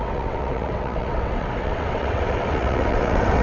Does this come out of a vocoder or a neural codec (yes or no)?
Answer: yes